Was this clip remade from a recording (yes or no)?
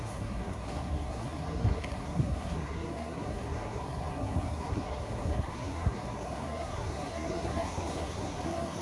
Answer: yes